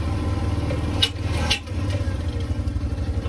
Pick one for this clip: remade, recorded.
recorded